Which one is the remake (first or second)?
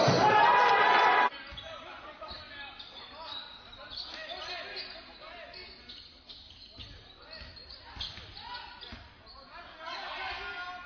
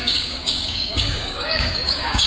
second